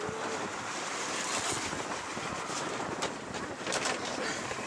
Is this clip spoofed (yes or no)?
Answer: no